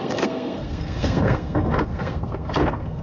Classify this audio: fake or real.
fake